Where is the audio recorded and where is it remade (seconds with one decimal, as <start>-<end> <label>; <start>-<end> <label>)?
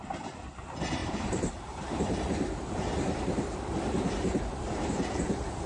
0.0-1.0 recorded; 1.0-4.4 remade; 4.4-5.7 recorded